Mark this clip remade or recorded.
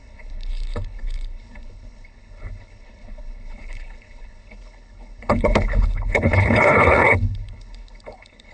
remade